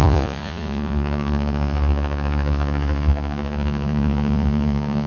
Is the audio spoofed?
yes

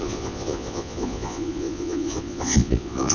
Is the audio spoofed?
yes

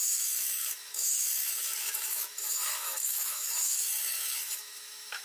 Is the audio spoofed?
yes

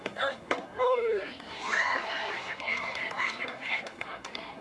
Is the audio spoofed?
yes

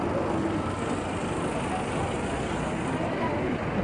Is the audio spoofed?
no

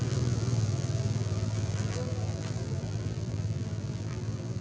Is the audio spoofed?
yes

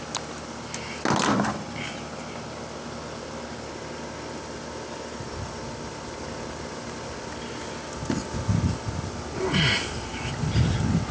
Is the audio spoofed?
no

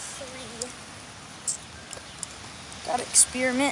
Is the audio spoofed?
no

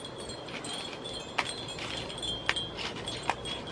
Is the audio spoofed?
no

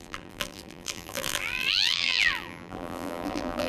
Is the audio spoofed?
yes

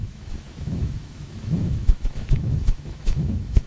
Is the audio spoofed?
yes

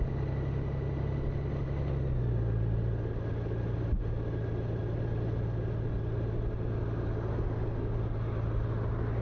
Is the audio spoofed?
no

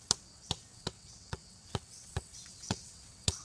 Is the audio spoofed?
yes